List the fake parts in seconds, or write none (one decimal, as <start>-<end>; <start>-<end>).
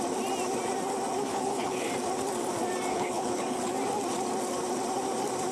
1.3-1.9; 2.9-3.7